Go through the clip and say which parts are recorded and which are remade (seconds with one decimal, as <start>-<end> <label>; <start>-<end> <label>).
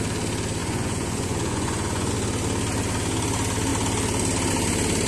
0.0-0.6 recorded; 0.6-2.1 remade; 2.1-5.1 recorded